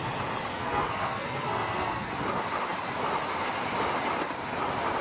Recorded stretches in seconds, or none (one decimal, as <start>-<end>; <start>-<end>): 0.0-0.5; 2.1-5.0